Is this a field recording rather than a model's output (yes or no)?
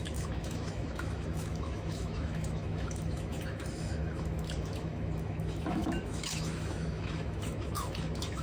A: no